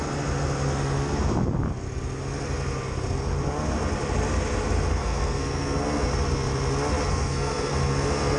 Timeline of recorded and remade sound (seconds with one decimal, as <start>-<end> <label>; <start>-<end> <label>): 0.0-4.9 recorded; 4.9-6.1 remade; 6.1-7.1 recorded; 7.1-8.4 remade

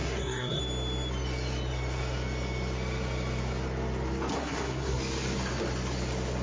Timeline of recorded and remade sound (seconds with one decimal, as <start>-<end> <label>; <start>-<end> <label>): 0.0-0.6 remade; 0.6-4.3 recorded; 4.3-5.0 remade; 5.0-6.4 recorded

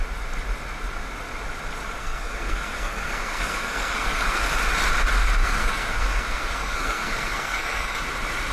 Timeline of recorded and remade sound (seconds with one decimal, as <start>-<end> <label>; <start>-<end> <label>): 0.0-2.0 recorded; 2.0-4.5 remade; 4.5-5.4 recorded; 5.4-8.0 remade; 8.0-8.5 recorded

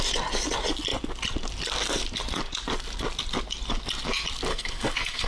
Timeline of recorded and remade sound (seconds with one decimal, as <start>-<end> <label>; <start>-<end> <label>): 0.0-4.5 recorded; 4.5-5.3 remade

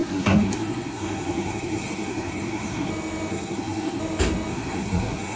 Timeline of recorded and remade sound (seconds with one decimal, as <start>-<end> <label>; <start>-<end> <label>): 0.0-2.9 remade; 2.9-3.3 recorded; 3.3-4.0 remade; 4.0-4.5 recorded; 4.5-5.4 remade

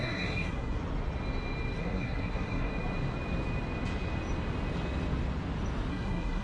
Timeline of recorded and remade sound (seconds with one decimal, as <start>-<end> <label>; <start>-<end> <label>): 0.0-0.8 remade; 0.8-1.8 recorded; 1.8-2.7 remade; 2.7-5.9 recorded; 5.9-6.4 remade